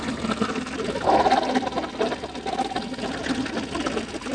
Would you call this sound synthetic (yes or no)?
no